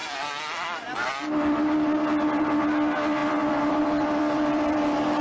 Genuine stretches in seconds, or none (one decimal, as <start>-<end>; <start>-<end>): 0.0-5.2